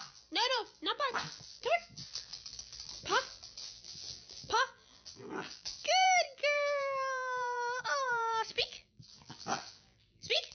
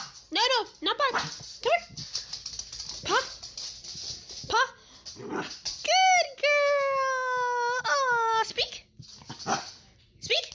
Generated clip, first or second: first